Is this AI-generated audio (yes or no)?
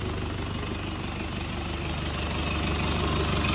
no